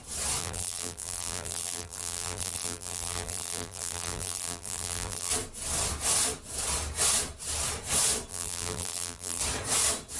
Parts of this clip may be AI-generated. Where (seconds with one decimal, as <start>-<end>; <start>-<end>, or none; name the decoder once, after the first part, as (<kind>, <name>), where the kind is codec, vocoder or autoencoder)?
0.4-5.3 (vocoder, BigVGAN v2); 8.3-9.4